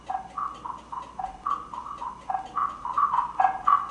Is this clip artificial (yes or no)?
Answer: no